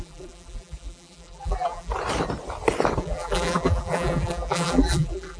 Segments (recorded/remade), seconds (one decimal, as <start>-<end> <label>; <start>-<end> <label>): 0.0-1.9 remade; 1.9-3.0 recorded; 3.0-5.4 remade